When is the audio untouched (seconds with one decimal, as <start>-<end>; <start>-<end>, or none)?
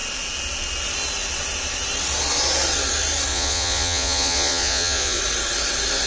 0.0-3.3; 5.2-6.1